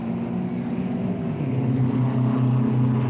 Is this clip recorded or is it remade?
recorded